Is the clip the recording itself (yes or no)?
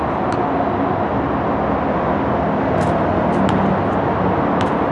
yes